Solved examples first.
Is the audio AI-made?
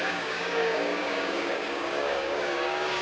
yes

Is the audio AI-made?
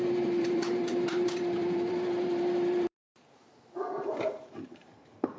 yes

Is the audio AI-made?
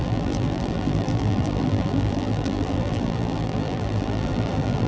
yes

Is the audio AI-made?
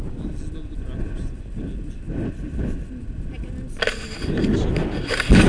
no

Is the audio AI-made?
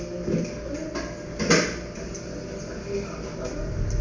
no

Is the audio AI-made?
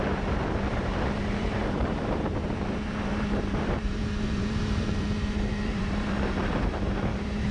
yes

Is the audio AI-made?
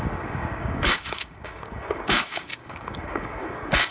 yes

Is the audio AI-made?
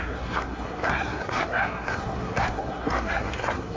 yes